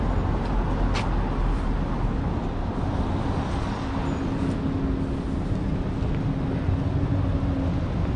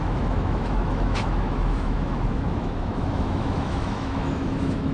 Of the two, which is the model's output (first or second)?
second